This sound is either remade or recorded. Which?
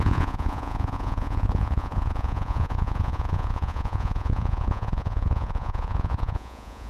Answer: remade